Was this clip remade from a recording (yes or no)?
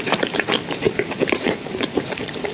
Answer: yes